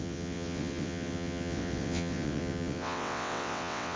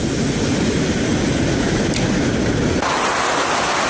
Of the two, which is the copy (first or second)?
first